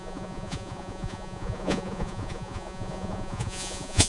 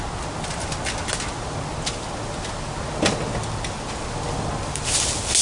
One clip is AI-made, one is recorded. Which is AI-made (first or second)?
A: first